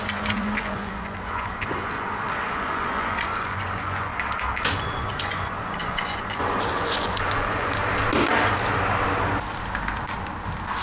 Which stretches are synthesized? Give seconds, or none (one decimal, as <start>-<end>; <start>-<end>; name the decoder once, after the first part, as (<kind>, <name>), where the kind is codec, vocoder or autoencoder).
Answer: 0.0-4.1 (vocoder, Vocos); 4.8-7.8